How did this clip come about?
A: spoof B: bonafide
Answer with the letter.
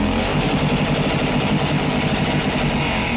B